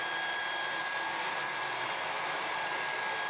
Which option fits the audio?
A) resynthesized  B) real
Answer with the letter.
A